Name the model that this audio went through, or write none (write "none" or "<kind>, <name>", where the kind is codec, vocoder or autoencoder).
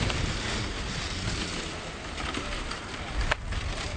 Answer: none